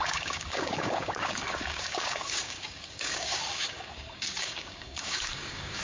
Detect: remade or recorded remade